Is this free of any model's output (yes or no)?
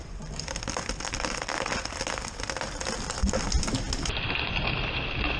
yes